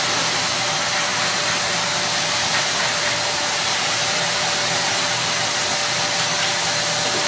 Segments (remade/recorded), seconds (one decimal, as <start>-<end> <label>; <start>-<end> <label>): 0.0-1.1 recorded; 1.1-4.9 remade; 4.9-7.3 recorded